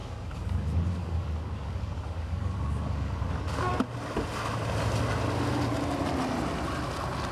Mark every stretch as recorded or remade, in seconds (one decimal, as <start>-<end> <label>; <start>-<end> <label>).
0.0-3.7 remade; 3.7-7.3 recorded